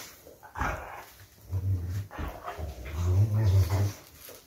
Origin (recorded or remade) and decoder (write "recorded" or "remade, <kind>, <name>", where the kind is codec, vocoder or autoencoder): recorded